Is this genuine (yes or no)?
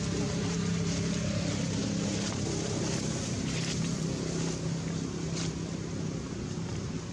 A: yes